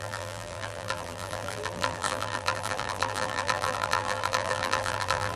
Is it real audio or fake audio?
fake